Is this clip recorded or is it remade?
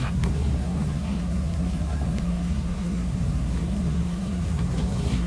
remade